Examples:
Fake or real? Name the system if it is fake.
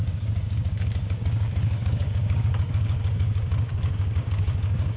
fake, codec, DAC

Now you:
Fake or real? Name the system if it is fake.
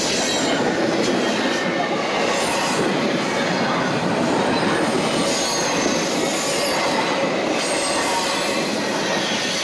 real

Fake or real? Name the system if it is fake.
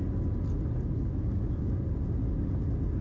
real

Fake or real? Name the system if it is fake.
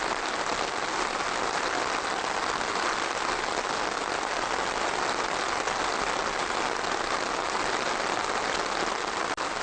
real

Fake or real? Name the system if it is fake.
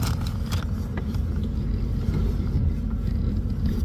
real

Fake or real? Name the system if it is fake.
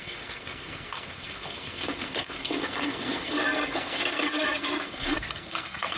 fake, codec, SNAC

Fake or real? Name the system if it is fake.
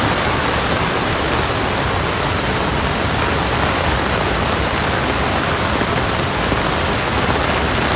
real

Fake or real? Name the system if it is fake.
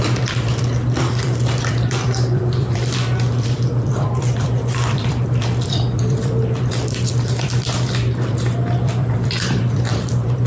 fake, vocoder, BigVGAN v2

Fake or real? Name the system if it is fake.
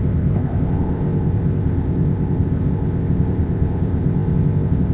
fake, codec, ZipCodec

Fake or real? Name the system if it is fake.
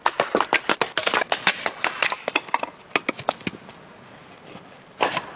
real